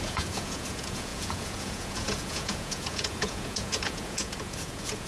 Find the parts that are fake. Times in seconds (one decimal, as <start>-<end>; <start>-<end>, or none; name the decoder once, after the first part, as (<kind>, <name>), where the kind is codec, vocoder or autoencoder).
0.0-5.1 (vocoder, Vocos)